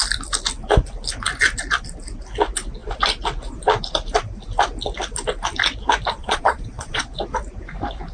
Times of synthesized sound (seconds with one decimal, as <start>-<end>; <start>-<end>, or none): 6.2-7.0